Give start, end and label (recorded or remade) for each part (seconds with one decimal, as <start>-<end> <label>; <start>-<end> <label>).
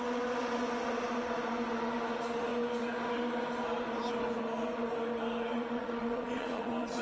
0.0-5.5 recorded; 5.5-7.0 remade